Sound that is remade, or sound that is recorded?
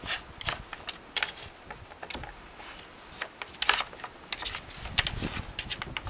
recorded